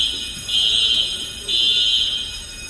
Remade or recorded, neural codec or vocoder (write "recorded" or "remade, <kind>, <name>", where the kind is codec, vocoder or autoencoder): recorded